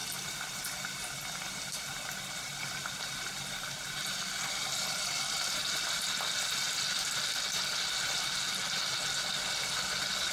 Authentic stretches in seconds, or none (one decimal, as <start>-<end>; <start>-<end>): 0.0-10.3